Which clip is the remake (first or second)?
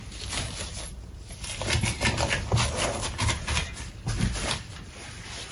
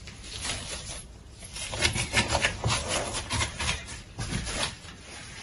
second